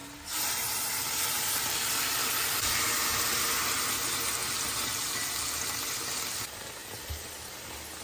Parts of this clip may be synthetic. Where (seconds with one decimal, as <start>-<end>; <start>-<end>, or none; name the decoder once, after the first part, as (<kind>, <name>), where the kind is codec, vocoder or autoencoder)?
2.2-2.8 (vocoder, BigVGAN v2); 6.8-7.5